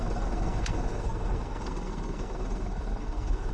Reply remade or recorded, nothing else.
remade